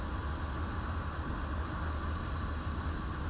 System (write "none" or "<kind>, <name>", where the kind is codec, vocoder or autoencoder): none